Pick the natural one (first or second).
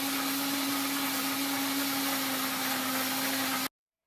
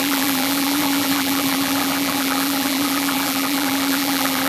first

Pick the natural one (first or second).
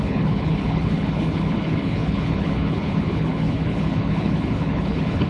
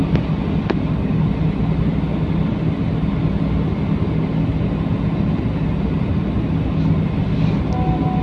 second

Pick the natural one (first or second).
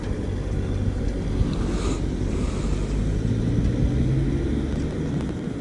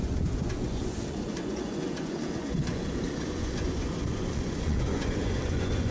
first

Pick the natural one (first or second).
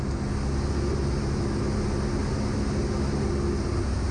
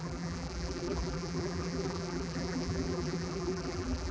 first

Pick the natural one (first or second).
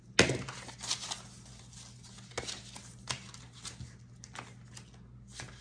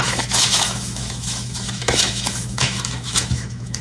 first